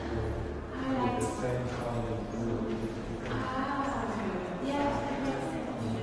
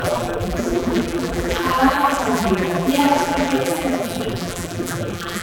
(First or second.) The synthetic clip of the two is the second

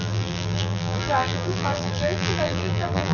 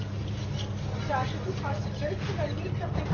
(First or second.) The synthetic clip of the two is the first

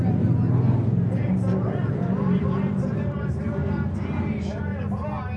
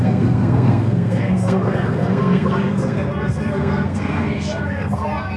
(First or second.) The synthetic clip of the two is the second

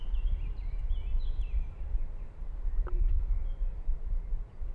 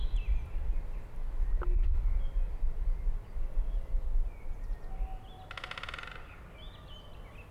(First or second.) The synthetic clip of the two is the first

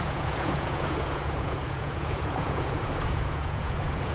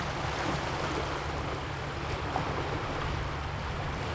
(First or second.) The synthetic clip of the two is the first